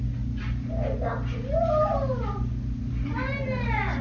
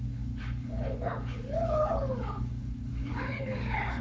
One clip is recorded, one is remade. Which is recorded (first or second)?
first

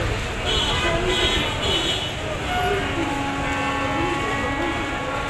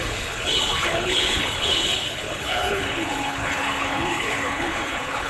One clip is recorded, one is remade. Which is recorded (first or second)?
first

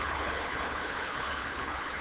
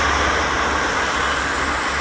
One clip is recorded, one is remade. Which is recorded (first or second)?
second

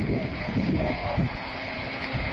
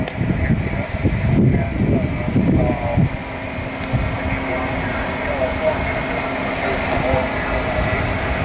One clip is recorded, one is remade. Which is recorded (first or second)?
second